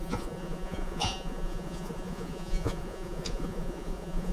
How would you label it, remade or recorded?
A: remade